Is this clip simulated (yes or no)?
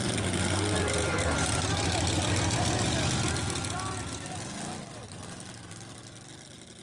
no